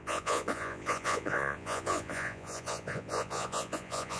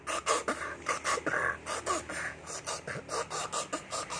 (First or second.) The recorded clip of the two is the second